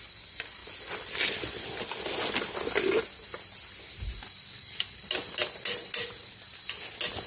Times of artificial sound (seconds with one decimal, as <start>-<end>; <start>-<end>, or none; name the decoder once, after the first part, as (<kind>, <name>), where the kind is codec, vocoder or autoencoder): none

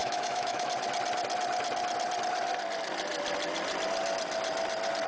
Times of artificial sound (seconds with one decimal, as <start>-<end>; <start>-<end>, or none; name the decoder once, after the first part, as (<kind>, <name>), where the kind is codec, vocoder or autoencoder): 0.0-0.7 (autoencoder, DAC-VAE)

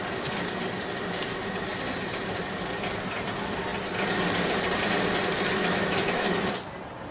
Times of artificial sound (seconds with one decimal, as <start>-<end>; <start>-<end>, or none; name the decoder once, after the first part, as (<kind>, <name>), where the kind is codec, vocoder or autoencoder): 5.6-6.3 (autoencoder, DAC-VAE)

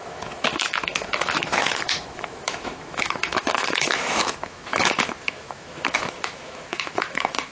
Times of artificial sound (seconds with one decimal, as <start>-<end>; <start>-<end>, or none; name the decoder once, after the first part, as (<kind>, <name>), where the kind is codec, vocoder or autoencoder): 0.0-7.5 (autoencoder, DAC-VAE)